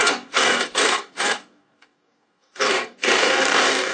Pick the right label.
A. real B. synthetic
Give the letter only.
B